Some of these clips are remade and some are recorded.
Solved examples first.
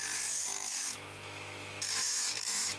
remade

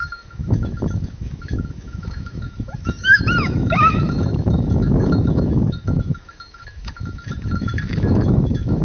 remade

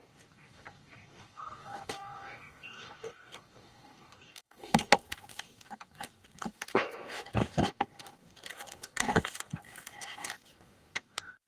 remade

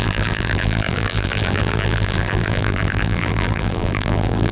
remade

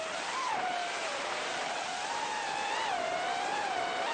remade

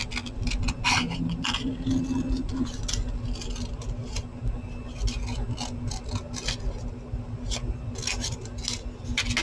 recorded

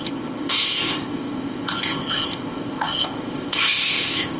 remade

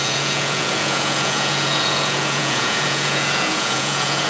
remade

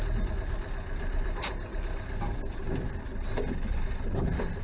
remade